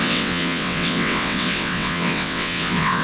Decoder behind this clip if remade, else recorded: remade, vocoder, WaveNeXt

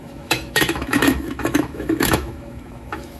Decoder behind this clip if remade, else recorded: remade, autoencoder, DAC-VAE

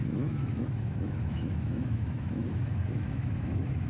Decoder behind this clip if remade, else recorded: remade, autoencoder, DAC-VAE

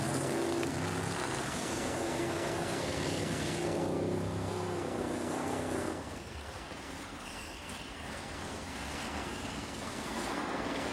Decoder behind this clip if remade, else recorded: remade, codec, SNAC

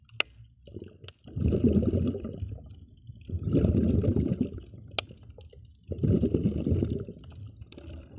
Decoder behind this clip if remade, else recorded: recorded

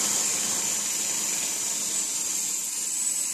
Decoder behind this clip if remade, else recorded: recorded